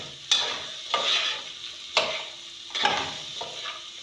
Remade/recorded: recorded